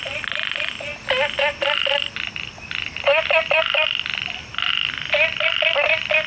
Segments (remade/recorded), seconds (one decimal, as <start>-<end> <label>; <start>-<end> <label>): 0.0-6.3 recorded